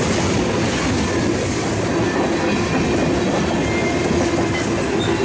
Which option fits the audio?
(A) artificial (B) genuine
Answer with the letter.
B